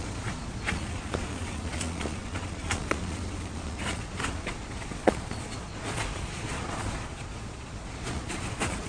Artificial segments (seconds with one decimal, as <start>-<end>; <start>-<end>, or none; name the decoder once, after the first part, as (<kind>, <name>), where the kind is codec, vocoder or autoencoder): 0.0-8.9 (vocoder, Vocos)